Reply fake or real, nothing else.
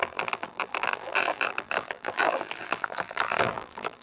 fake